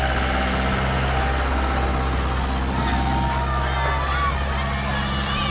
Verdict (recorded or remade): recorded